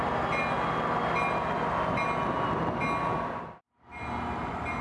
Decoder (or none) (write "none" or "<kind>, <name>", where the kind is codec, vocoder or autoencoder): none